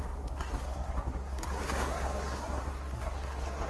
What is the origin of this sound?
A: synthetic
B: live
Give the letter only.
A